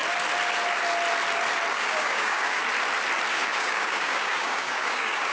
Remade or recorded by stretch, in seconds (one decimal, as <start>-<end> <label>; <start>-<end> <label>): 0.0-1.7 recorded; 1.7-2.6 remade; 2.6-3.3 recorded; 3.3-5.3 remade